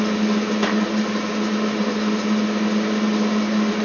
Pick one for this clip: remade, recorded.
recorded